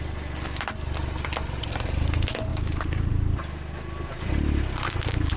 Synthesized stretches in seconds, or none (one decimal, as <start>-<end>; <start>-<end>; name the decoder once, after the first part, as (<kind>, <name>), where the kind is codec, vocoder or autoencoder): 2.5-3.1 (vocoder, BigVGAN v2)